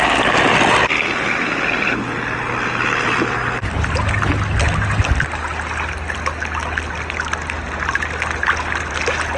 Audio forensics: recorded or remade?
recorded